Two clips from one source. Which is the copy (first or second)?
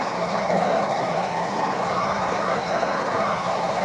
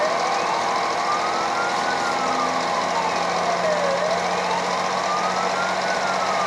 first